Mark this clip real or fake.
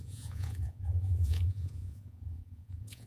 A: fake